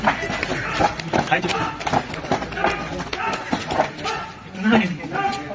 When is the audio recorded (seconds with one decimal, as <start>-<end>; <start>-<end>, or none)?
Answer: 0.0-5.5